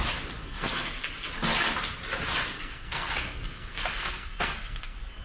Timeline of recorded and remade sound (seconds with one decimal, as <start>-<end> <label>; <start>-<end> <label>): 0.0-0.4 recorded; 0.4-1.0 remade; 1.0-2.5 recorded; 2.5-5.2 remade